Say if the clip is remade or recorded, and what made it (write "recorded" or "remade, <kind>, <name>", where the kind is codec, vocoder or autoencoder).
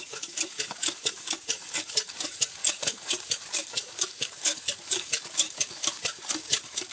remade, codec, DAC